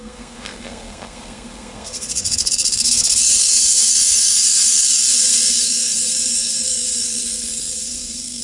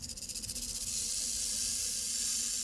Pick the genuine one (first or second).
second